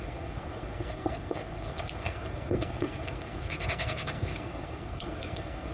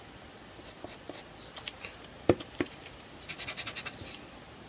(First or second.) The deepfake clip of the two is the first